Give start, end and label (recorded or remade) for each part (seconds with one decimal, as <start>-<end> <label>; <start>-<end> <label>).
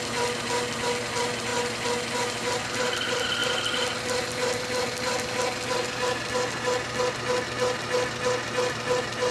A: 0.0-9.3 recorded